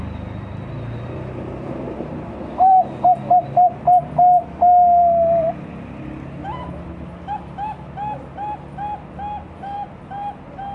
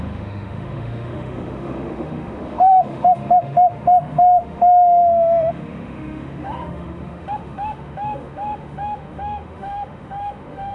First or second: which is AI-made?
second